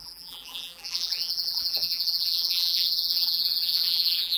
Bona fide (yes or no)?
no